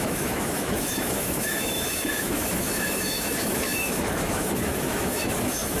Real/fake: fake